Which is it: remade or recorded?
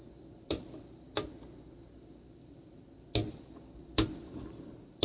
recorded